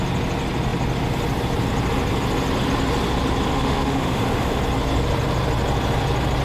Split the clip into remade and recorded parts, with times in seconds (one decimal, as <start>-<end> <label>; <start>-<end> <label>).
0.0-3.5 recorded; 3.5-4.6 remade; 4.6-6.4 recorded